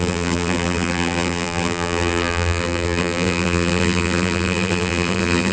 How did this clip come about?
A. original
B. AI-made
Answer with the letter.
B